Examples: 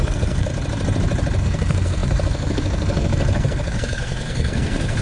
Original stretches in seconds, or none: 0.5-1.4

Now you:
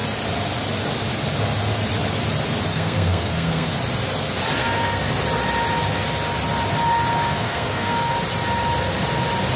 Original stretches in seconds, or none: 0.0-2.7; 3.7-4.6; 5.1-7.1; 8.1-9.6

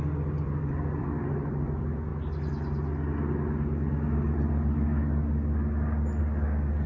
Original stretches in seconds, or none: 2.1-6.2

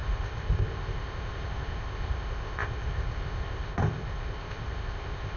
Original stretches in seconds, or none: none